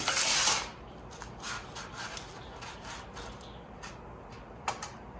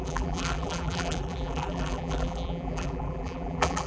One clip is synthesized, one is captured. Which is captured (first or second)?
first